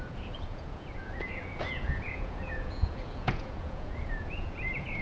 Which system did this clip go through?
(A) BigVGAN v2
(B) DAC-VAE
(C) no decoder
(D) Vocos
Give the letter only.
D